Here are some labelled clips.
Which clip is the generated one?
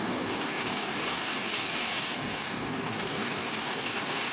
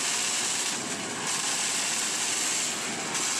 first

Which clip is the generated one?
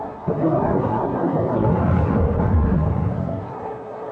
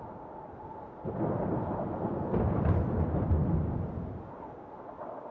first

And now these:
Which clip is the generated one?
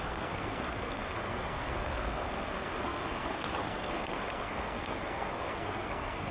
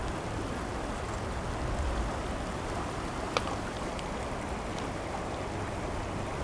first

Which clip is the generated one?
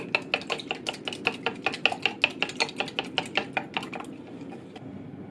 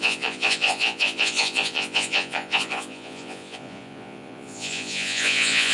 second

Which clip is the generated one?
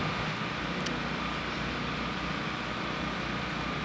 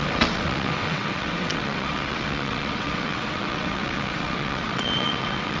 second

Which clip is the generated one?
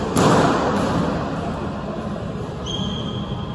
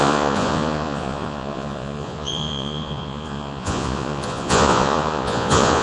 second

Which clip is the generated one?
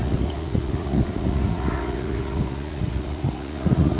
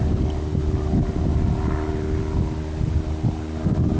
first